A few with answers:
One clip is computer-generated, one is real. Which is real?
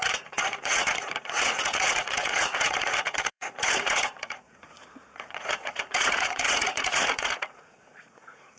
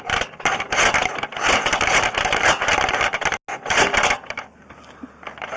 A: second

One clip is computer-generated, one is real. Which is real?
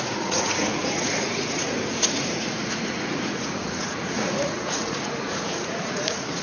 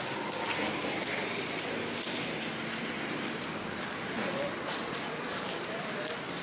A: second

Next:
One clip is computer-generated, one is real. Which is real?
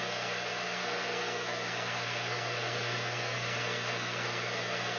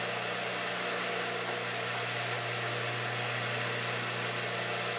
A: second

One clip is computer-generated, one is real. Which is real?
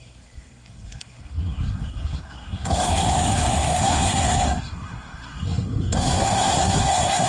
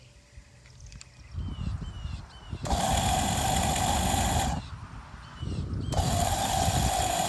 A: second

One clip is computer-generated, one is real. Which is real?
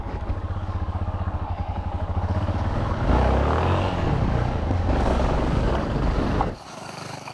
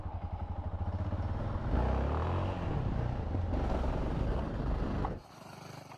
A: second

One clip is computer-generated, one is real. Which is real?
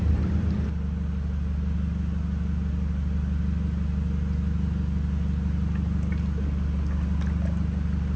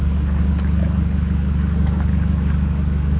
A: first